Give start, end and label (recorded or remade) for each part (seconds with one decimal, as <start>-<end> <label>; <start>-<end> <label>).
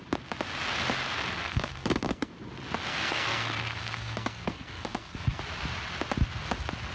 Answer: 0.0-1.4 recorded; 1.4-2.3 remade; 2.3-2.9 recorded; 2.9-5.4 remade; 5.4-6.9 recorded